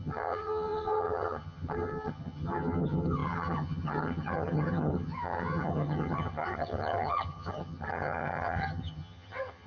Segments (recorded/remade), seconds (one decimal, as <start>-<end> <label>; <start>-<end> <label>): 0.0-9.7 remade